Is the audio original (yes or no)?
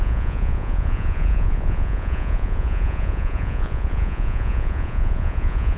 no